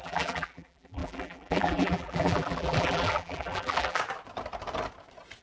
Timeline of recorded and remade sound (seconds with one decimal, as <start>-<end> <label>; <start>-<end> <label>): 0.0-4.0 remade; 4.0-5.4 recorded